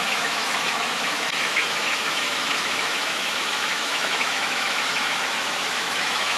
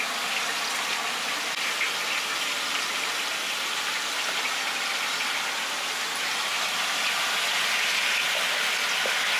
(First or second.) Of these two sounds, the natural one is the second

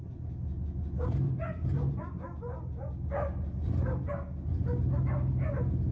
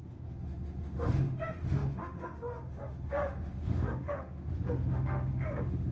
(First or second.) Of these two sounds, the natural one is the first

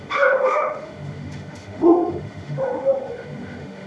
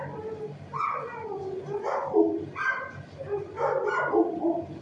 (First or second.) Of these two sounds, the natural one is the second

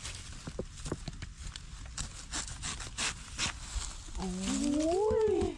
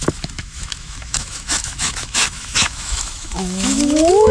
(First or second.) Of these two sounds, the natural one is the first